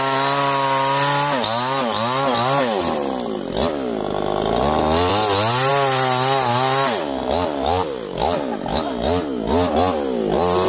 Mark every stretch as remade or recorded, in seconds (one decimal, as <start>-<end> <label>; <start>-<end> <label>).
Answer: 0.0-10.7 recorded

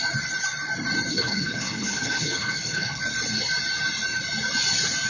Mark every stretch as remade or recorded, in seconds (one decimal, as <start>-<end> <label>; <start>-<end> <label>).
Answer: 0.0-1.1 recorded; 1.1-3.0 remade; 3.0-5.1 recorded

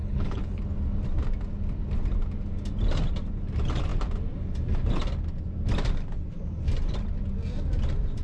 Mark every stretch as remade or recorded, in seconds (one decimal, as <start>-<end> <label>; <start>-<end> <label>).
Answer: 0.0-0.6 remade; 0.6-8.2 recorded